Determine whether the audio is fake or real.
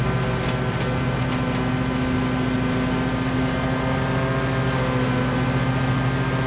real